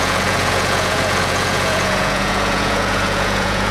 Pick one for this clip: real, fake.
fake